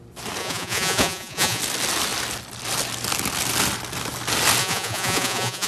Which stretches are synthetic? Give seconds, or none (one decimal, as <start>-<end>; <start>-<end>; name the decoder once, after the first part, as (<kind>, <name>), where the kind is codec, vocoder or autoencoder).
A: 0.4-1.6 (vocoder, Vocos); 4.6-5.7